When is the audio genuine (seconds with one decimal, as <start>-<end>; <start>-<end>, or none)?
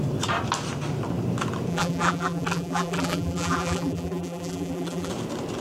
0.0-1.7; 5.1-5.6